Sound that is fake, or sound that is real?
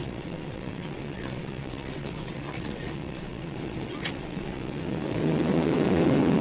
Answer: fake